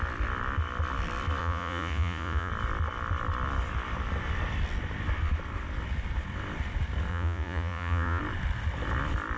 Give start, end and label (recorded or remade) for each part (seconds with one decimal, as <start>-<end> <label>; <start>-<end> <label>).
0.0-1.4 recorded; 1.4-2.5 remade; 2.5-7.1 recorded; 7.1-8.2 remade; 8.2-9.4 recorded